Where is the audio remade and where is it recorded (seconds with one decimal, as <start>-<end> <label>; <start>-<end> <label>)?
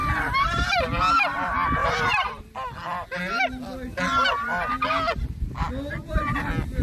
0.0-6.8 recorded